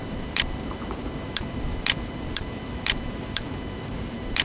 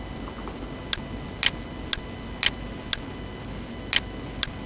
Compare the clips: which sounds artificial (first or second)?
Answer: first